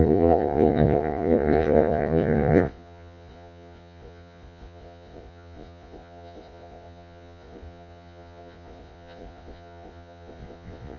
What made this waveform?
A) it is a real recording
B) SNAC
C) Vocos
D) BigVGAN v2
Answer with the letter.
C